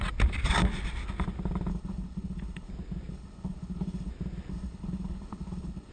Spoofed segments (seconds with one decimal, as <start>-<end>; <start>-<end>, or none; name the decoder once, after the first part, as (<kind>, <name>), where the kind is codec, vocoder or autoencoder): 1.7-2.7 (codec, HILCodec); 3.1-4.1; 4.5-5.9